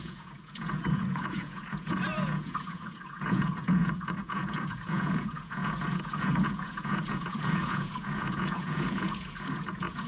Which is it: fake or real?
fake